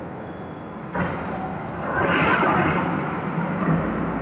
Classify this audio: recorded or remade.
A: recorded